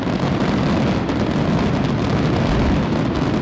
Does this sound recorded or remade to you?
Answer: recorded